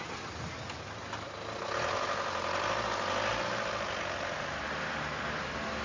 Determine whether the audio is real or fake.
real